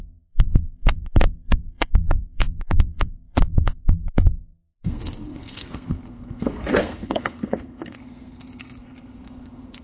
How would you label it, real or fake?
fake